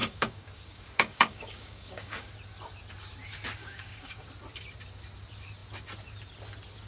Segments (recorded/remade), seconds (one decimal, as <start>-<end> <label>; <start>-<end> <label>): 0.0-2.3 remade; 2.3-3.6 recorded; 3.6-4.3 remade; 4.3-6.9 recorded